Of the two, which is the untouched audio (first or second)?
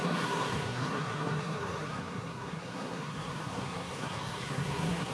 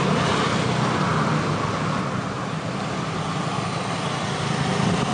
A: second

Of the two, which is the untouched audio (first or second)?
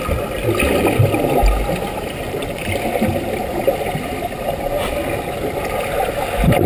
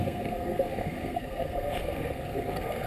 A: first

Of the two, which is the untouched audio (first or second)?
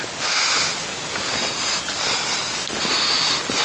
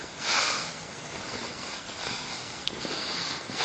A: first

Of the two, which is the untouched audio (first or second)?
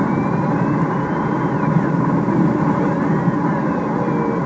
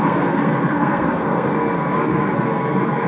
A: first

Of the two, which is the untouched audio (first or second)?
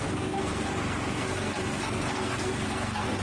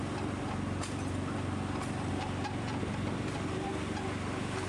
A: second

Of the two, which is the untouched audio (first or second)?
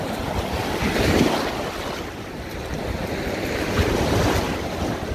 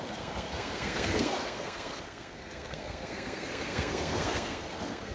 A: first